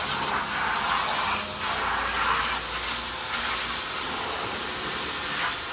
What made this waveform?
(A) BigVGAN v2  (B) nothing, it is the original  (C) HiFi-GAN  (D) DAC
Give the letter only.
B